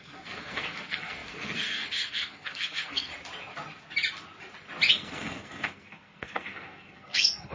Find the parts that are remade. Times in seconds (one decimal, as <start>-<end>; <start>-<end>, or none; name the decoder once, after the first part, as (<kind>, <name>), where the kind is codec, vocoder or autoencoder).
0.0-3.1 (codec, SNAC); 4.9-7.5